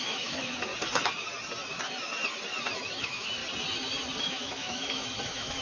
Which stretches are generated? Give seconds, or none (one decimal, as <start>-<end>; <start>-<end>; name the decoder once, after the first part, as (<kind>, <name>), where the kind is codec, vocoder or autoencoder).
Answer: 0.0-0.7 (autoencoder, DAC-VAE); 3.0-3.4; 4.2-5.6